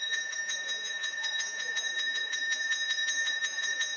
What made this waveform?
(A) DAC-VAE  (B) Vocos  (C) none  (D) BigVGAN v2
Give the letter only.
B